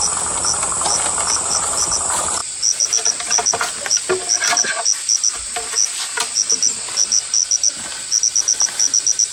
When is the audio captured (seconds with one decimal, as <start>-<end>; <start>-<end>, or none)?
0.0-9.3